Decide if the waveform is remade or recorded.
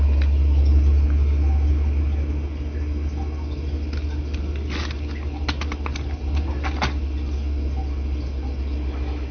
recorded